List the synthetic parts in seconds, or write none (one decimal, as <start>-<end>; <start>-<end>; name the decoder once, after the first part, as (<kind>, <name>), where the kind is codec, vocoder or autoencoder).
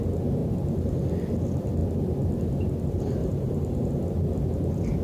3.2-4.0 (vocoder, BigVGAN v2)